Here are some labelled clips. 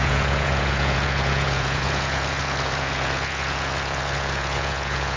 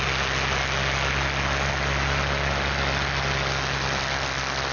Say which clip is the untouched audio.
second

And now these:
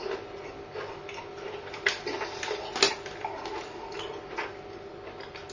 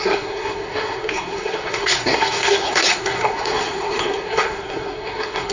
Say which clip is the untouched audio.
first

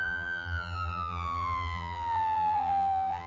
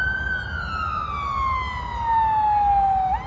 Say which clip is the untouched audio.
second